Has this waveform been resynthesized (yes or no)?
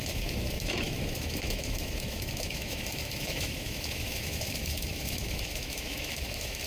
yes